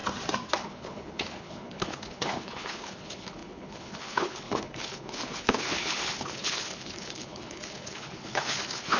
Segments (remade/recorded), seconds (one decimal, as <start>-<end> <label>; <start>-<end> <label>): 0.0-0.6 recorded; 0.6-9.0 remade